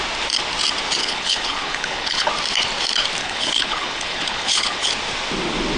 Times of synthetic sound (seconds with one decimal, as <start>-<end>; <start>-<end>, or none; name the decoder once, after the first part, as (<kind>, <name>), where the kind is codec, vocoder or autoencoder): 1.0-2.3 (codec, HILCodec); 3.2-4.9